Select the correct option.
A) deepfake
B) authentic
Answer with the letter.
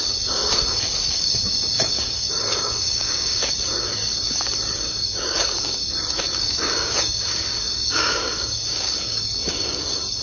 A